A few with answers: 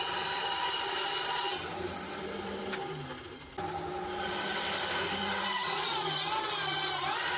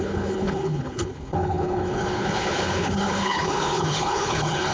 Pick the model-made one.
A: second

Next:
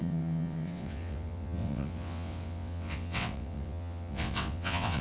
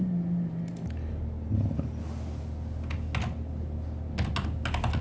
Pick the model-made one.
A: first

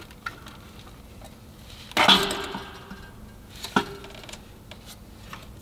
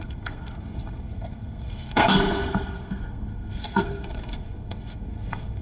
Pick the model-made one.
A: second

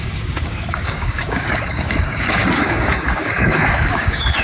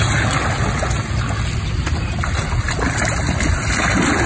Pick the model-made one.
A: first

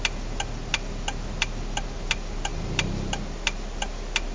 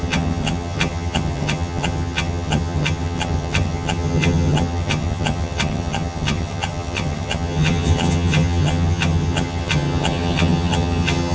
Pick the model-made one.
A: second